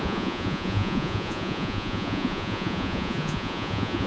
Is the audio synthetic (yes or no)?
yes